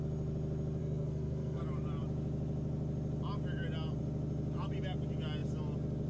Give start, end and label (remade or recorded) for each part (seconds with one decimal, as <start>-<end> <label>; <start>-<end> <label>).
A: 0.0-0.8 recorded; 0.8-1.6 remade; 1.6-6.1 recorded